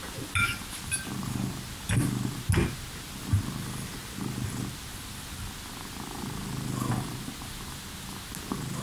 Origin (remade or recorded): recorded